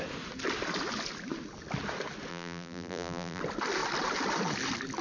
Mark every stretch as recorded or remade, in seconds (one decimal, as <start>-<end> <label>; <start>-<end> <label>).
0.0-2.3 recorded; 2.3-3.4 remade; 3.4-5.0 recorded